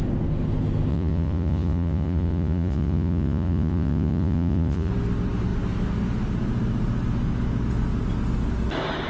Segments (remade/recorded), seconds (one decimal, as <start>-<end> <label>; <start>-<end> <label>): 0.0-0.9 recorded; 0.9-4.9 remade; 4.9-9.1 recorded